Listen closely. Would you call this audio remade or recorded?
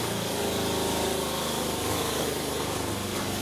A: remade